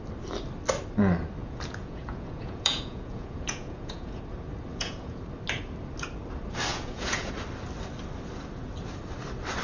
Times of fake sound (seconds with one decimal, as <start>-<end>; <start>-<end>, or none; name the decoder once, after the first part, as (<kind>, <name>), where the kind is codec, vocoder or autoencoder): 1.4-4.2 (vocoder, Vocos); 4.7-5.2; 6.7-7.3